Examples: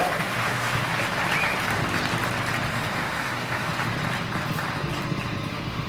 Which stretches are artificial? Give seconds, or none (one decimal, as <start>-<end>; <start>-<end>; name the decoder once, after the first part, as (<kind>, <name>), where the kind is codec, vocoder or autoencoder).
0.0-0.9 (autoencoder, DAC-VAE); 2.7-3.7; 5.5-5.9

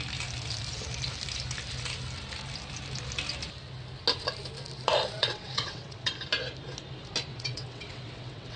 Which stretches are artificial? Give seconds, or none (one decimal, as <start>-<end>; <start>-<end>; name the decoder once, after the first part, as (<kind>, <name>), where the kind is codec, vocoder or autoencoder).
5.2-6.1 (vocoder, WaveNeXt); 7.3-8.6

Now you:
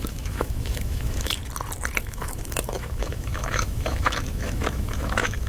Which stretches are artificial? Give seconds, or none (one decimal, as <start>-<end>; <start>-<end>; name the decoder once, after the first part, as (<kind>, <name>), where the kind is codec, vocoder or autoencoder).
0.0-1.4 (autoencoder, DAC-VAE); 2.0-5.5

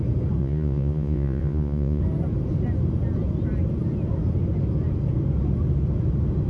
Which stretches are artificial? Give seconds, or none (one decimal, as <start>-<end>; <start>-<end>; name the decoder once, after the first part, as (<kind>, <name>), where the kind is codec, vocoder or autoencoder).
0.4-2.0 (vocoder, Vocos)

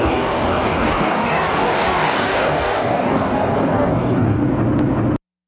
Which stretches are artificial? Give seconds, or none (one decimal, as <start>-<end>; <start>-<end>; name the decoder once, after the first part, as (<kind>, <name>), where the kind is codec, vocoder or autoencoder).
0.0-4.4 (codec, DAC)

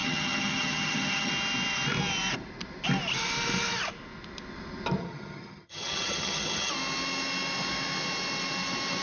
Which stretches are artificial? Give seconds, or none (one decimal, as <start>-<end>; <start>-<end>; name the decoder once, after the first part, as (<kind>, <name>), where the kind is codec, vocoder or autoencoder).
0.0-1.3 (vocoder, HiFi-GAN); 5.0-6.7